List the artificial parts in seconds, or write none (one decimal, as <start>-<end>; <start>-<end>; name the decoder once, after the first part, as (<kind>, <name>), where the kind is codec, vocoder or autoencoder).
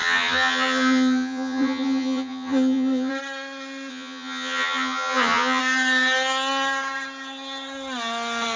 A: 0.0-3.1 (vocoder, HiFi-GAN); 3.9-5.6